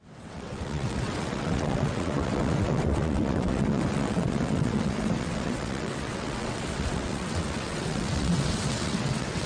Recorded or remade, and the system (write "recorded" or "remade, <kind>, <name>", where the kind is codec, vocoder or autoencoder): remade, vocoder, WaveNeXt